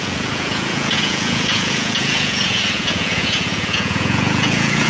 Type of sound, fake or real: fake